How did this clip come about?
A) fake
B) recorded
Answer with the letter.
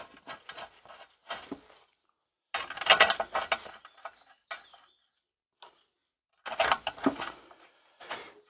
B